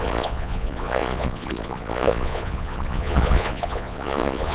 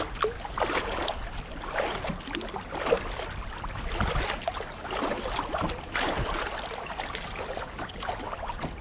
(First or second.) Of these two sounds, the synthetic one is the first